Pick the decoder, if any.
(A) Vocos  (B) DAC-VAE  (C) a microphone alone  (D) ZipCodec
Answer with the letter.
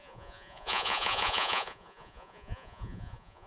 A